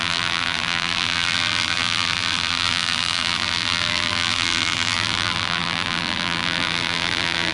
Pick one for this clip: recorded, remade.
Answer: remade